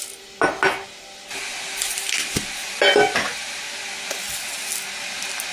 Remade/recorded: recorded